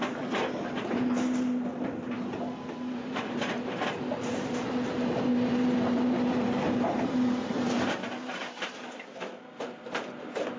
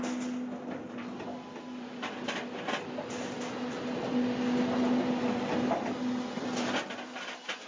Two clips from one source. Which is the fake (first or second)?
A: first